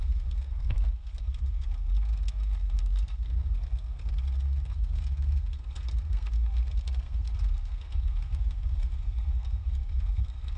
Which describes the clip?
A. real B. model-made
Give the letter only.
B